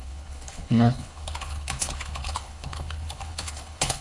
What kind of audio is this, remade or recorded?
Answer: remade